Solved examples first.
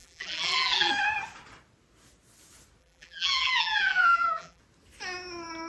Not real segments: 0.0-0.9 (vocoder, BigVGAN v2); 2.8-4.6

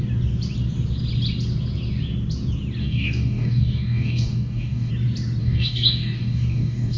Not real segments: 2.8-4.9 (codec, DAC); 5.4-7.0

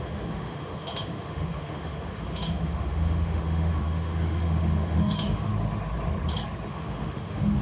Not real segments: 0.0-5.5 (autoencoder, DAC-VAE); 6.7-7.6

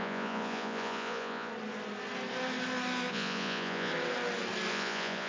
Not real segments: 0.0-1.5 (vocoder, Vocos); 3.1-3.9; 4.7-5.3

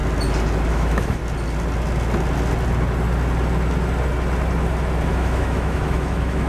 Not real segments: 0.7-1.2 (autoencoder, DAC-VAE); 5.1-6.5

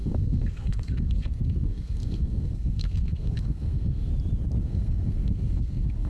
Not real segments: 0.0-4.1 (codec, SNAC); 4.6-6.1